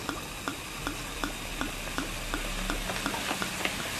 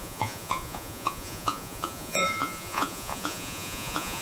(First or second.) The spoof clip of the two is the second